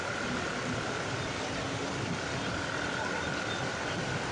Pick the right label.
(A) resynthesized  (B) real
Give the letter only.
B